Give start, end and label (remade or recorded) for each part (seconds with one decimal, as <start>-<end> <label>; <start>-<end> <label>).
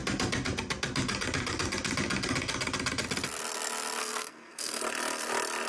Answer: 0.0-4.0 recorded; 4.0-4.8 remade; 4.8-5.7 recorded